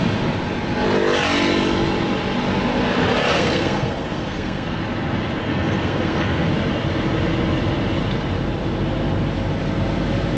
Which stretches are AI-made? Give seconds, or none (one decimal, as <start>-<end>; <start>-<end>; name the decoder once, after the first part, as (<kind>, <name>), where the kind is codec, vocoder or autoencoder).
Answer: 3.3-4.8 (codec, SNAC); 5.4-6.5